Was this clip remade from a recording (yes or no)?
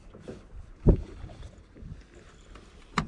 no